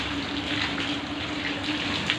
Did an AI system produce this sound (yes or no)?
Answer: no